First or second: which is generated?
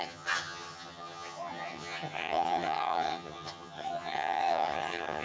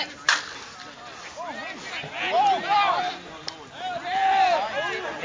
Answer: first